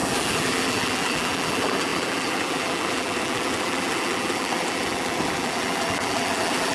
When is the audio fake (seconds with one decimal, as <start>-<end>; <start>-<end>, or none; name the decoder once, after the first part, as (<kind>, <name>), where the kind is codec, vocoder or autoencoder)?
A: 0.0-6.7 (vocoder, BigVGAN v2)